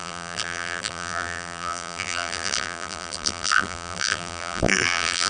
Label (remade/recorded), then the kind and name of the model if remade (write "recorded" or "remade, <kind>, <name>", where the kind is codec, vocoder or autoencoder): remade, vocoder, BigVGAN v2